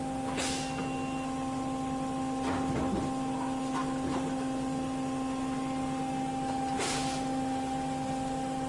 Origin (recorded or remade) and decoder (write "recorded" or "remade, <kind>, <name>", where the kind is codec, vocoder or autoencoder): recorded